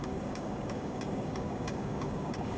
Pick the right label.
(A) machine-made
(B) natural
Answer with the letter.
A